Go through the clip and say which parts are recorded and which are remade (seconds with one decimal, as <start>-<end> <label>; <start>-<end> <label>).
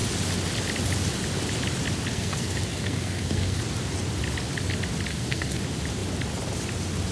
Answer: 0.0-2.1 recorded; 2.1-3.6 remade; 3.6-5.1 recorded; 5.1-5.6 remade; 5.6-7.1 recorded